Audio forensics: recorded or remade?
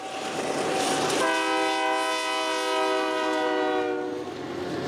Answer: recorded